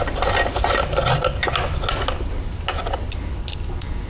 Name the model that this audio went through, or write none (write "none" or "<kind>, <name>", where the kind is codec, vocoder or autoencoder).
none